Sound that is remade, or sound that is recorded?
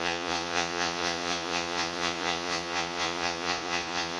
remade